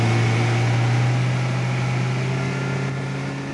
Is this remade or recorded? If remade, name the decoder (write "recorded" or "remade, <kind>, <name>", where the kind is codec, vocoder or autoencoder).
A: recorded